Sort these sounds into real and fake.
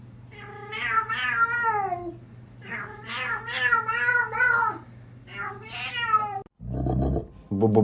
real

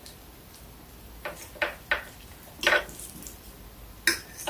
real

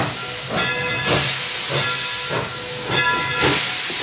real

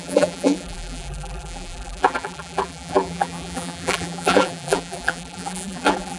fake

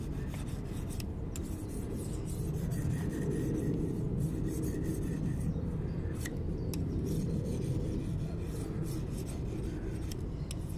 real